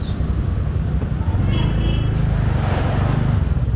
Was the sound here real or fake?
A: real